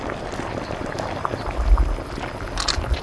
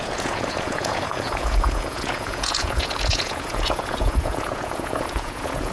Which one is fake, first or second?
second